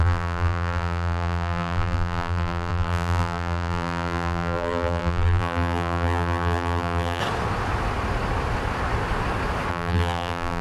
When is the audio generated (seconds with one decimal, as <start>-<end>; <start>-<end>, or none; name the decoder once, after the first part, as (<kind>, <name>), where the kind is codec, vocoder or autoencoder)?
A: 0.0-7.2 (vocoder, BigVGAN v2); 9.7-10.6